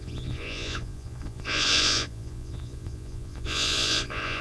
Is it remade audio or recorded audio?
remade